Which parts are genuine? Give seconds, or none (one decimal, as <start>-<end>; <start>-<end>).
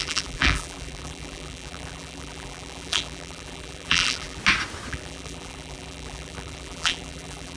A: 4.4-4.9